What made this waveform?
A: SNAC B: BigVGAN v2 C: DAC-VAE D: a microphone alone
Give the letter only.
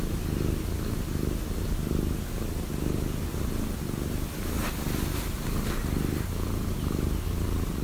D